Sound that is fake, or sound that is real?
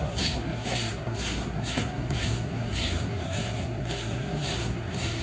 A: fake